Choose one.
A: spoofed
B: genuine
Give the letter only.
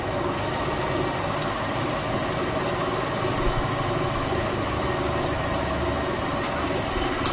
B